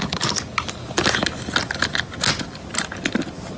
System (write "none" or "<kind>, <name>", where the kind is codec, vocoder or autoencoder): none